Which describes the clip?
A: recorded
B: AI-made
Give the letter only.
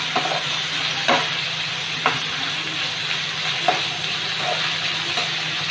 A